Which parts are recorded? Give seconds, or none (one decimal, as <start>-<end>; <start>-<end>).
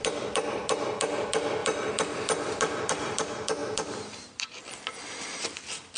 0.0-6.0